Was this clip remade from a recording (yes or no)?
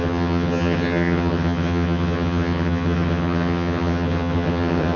yes